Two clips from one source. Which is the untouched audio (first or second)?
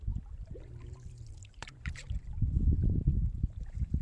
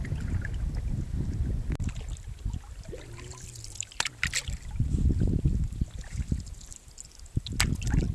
second